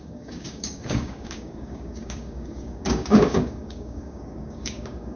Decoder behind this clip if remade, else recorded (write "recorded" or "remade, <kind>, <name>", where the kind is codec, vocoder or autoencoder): remade, codec, DAC